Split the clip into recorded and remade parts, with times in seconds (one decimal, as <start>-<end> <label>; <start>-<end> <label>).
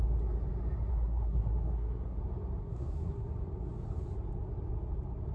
0.0-0.9 recorded; 0.9-2.2 remade; 2.2-2.6 recorded; 2.6-3.3 remade; 3.3-5.3 recorded